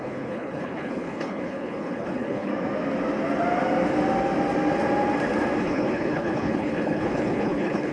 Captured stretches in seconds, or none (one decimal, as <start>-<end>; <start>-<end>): 2.5-5.6